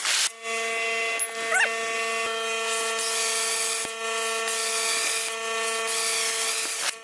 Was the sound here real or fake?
real